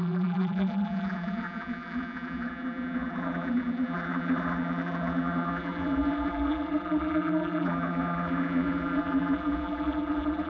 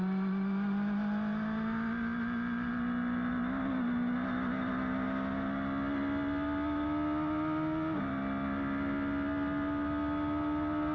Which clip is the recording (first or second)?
second